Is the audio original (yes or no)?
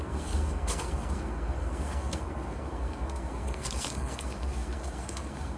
no